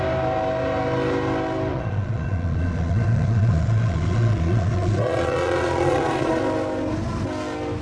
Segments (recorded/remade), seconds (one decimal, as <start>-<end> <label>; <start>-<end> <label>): 0.0-1.7 recorded; 1.7-6.4 remade; 6.4-7.8 recorded